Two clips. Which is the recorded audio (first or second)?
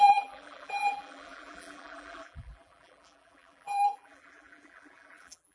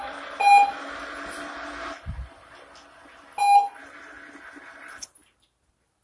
second